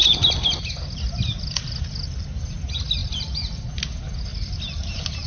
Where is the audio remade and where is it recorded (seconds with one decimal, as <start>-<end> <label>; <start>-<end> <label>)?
0.0-5.3 recorded